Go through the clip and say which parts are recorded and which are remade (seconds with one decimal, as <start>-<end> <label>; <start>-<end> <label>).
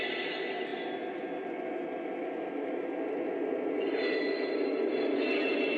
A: 0.0-5.8 recorded